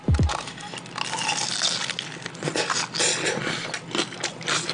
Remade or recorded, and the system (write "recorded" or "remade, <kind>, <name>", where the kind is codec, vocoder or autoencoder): recorded